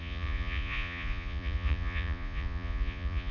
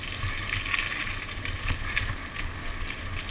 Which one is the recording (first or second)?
second